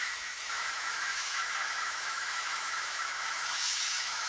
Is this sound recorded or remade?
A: remade